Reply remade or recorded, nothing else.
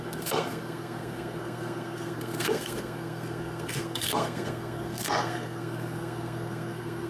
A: remade